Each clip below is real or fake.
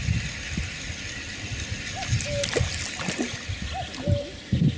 real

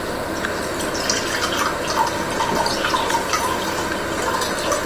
real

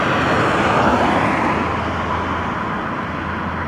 real